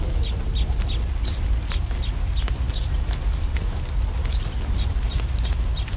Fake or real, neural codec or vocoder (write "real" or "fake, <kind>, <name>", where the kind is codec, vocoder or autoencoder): real